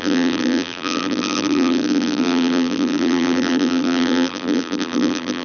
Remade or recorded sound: remade